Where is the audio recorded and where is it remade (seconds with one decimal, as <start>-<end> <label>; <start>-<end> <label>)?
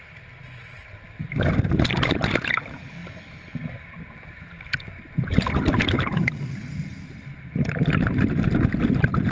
0.0-9.3 recorded